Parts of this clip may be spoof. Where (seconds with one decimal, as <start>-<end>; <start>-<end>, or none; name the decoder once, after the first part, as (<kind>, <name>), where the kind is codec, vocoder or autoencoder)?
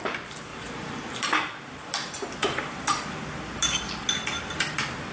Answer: 0.5-1.1 (vocoder, BigVGAN v2); 2.4-3.2